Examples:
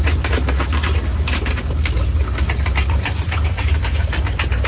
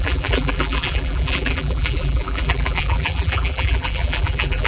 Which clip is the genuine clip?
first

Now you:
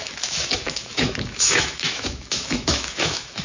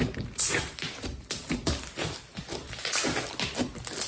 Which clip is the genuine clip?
second